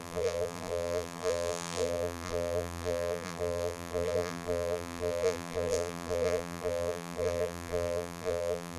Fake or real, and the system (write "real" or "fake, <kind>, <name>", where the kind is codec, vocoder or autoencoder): fake, vocoder, BigVGAN v2